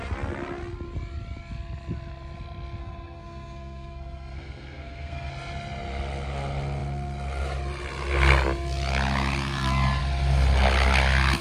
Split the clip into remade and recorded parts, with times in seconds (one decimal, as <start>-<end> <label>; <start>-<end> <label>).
0.0-2.8 recorded; 2.8-5.3 remade; 5.3-11.4 recorded